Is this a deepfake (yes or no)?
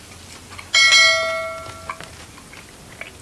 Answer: no